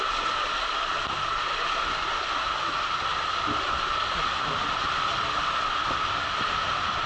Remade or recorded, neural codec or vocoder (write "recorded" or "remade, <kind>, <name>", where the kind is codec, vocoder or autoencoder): recorded